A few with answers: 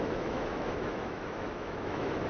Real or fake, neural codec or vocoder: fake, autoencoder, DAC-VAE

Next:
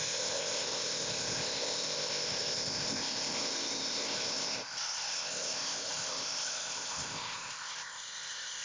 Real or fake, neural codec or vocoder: fake, codec, ZipCodec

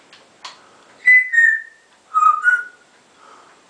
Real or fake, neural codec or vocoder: real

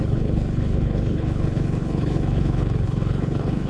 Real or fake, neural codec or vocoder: fake, codec, HILCodec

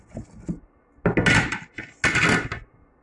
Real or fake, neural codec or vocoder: real